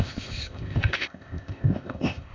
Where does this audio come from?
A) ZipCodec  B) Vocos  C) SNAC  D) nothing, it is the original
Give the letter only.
A